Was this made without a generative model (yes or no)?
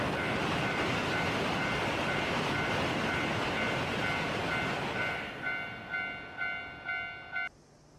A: yes